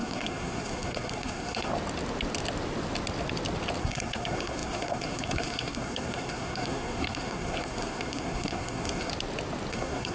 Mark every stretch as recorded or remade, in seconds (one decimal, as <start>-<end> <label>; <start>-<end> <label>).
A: 0.0-1.7 remade; 1.7-3.8 recorded; 3.8-9.1 remade; 9.1-9.7 recorded; 9.7-10.1 remade